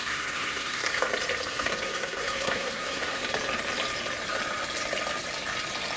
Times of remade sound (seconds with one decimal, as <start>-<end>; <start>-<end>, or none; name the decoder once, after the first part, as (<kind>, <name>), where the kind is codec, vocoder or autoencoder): 0.0-1.0 (codec, SNAC); 1.5-3.2